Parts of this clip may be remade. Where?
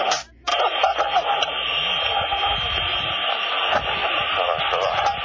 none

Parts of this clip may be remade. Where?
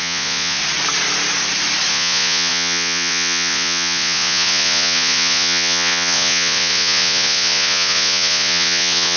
0.0-0.6 (vocoder, Vocos); 1.9-9.2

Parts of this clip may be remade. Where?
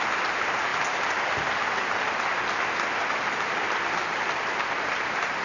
none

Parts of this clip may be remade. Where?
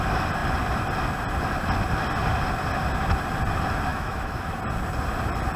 3.9-4.5 (autoencoder, DAC-VAE)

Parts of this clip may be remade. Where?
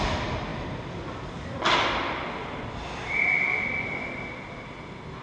none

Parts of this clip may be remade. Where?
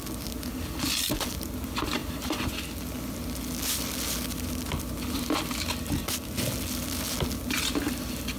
none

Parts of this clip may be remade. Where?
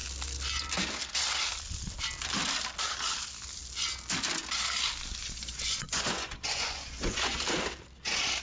5.2-7.4 (vocoder, Vocos)